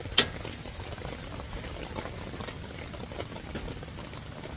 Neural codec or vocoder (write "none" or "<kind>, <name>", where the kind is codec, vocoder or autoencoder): none